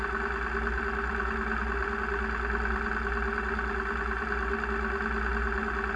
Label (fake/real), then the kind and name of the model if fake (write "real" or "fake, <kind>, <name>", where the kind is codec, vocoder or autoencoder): real